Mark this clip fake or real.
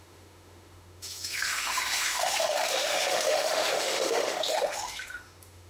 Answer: fake